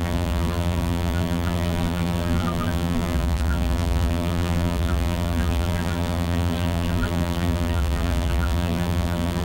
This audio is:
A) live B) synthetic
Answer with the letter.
B